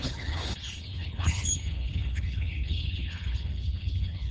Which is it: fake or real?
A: fake